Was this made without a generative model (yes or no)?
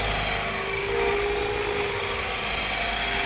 yes